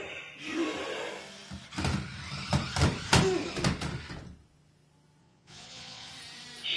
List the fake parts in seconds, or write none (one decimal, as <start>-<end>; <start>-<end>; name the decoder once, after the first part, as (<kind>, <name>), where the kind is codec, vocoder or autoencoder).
5.2-6.1 (vocoder, Vocos)

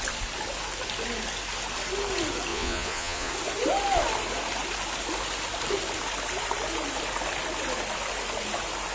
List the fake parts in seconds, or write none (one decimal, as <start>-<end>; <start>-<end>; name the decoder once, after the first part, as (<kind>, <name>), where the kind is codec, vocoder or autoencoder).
2.5-3.3 (vocoder, Vocos)

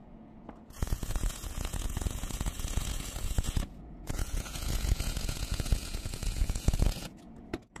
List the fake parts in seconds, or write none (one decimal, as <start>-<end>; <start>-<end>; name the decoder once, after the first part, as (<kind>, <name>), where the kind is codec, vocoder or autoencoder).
0.0-7.8 (vocoder, Vocos)

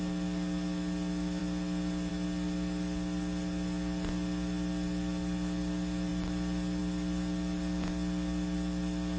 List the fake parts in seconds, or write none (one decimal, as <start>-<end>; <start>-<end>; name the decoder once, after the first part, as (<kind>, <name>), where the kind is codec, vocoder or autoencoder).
none

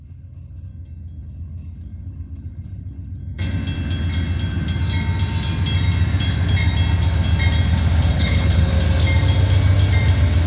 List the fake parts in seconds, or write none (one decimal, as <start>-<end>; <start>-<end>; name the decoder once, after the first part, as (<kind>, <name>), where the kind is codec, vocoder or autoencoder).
0.0-0.7 (codec, HILCodec); 1.2-3.2; 8.1-8.7

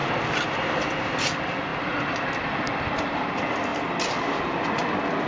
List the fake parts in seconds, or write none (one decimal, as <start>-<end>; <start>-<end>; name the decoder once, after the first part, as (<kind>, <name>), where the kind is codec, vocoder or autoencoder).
none

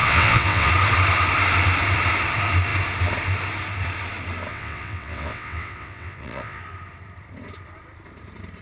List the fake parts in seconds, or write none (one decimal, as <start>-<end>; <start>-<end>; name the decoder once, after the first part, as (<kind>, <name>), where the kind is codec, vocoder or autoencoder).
0.0-0.7 (vocoder, WaveNeXt); 4.5-6.6

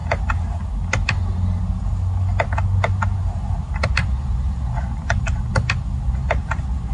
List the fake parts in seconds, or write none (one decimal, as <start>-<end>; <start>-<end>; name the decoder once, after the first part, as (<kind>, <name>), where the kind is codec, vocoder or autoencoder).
none